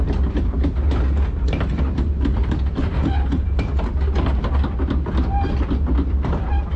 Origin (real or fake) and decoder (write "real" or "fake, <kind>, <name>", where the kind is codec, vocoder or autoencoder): real